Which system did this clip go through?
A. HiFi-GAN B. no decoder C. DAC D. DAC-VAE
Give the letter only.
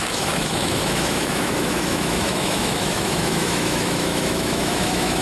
D